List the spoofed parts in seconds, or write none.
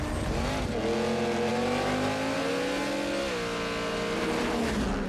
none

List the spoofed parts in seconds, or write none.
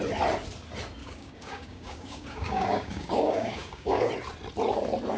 1.0-4.1 (codec, DAC)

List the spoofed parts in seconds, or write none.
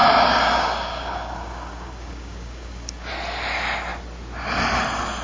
0.0-3.1 (codec, DAC)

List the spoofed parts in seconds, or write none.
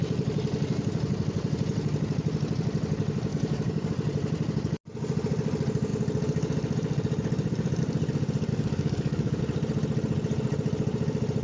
3.3-3.9 (codec, DAC); 8.5-9.4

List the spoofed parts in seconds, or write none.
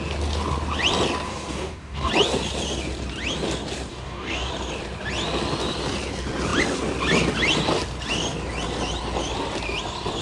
1.3-2.1 (codec, DAC); 3.9-4.5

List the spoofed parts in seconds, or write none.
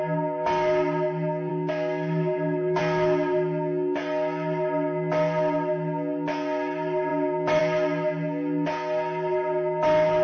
1.5-2.8 (codec, DAC)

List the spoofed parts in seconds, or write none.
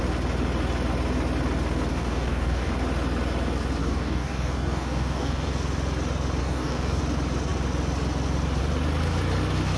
1.9-2.7 (codec, DAC); 3.8-5.5; 6.4-7.0